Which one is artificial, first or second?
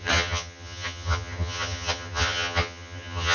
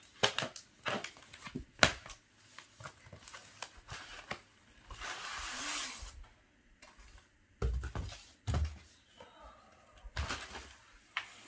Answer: first